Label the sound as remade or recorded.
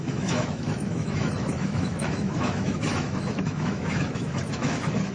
remade